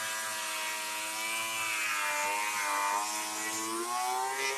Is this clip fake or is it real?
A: real